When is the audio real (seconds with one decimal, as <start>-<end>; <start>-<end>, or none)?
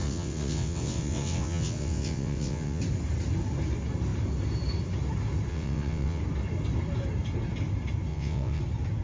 2.8-5.5; 6.2-8.1; 8.6-9.0